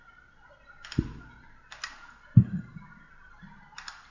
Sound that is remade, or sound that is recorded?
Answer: recorded